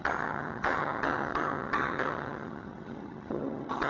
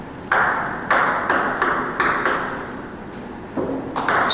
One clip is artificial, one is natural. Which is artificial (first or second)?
first